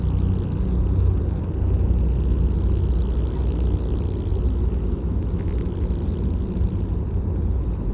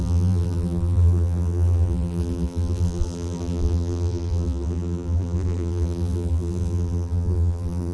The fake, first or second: second